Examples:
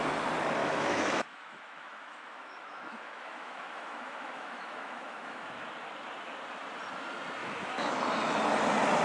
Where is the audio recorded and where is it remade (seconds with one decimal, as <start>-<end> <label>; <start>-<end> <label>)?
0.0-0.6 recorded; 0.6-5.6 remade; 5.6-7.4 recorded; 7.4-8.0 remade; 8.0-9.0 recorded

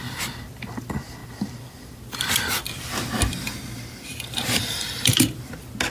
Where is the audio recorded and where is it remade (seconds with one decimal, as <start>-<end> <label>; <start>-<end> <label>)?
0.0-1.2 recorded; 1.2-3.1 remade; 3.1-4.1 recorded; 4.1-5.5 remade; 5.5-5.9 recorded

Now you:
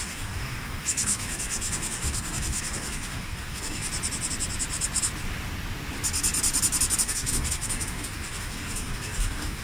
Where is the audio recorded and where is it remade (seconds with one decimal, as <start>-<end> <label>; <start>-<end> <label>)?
0.0-3.9 remade; 3.9-7.0 recorded; 7.0-9.6 remade